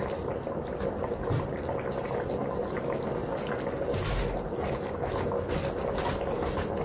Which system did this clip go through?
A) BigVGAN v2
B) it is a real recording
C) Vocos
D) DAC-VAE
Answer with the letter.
B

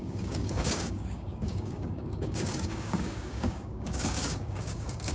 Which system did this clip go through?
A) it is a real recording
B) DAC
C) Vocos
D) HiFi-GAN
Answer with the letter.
B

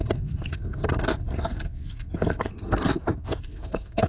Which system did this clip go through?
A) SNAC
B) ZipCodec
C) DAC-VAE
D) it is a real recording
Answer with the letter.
A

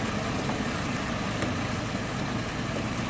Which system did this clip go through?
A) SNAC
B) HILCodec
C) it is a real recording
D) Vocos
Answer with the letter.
C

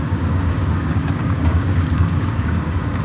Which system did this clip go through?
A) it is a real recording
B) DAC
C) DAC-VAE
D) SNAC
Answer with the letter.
B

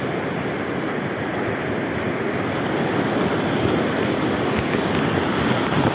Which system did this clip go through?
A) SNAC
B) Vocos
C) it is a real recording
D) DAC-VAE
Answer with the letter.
C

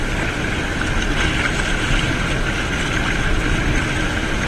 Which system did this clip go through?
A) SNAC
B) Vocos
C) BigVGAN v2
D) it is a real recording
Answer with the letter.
D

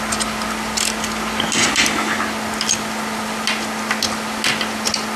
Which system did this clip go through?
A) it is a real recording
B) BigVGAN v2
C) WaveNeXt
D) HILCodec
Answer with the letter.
A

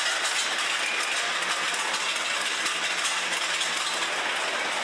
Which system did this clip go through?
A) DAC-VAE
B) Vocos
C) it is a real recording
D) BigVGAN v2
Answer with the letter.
C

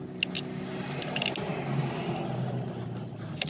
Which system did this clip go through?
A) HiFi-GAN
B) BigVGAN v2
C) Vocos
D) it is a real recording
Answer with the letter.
D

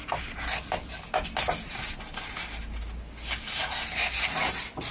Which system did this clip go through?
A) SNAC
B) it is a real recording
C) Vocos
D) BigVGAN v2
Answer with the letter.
B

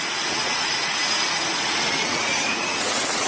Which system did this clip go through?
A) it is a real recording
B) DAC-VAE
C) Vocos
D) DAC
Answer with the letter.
C